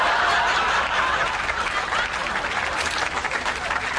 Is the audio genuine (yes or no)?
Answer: yes